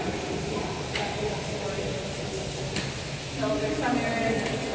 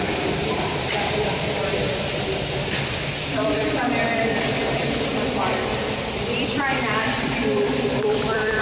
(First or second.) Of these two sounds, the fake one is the second